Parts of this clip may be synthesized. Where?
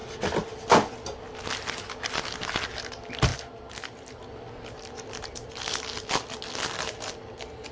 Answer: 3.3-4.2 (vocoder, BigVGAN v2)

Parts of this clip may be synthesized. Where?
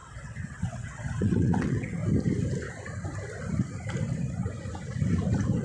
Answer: 0.0-2.0 (vocoder, WaveNeXt)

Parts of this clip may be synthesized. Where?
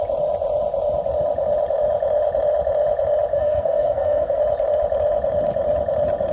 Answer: 3.3-4.4 (codec, SNAC)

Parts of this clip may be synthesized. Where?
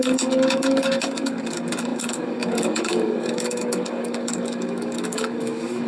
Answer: 0.0-5.9 (codec, DAC)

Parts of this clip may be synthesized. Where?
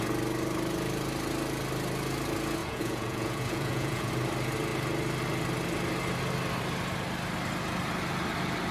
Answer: 2.6-4.1 (vocoder, Vocos)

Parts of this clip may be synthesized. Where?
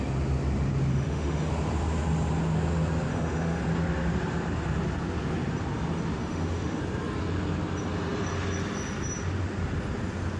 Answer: 0.9-1.5 (autoencoder, DAC-VAE); 3.1-3.6; 6.2-6.8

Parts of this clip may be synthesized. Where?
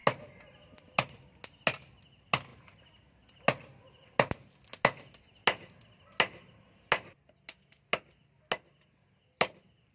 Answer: none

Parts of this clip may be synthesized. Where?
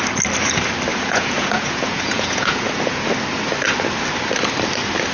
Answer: 0.9-3.1 (vocoder, Vocos)